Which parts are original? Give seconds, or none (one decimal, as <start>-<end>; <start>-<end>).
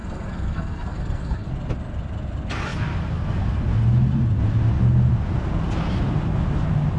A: 1.5-7.0